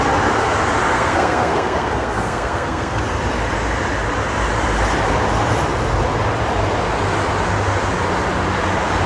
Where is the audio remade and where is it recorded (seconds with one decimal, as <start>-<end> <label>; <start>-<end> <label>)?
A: 0.0-0.9 recorded; 0.9-3.0 remade; 3.0-9.1 recorded